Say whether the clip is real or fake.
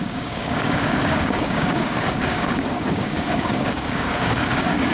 fake